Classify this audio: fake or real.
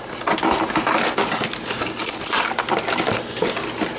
real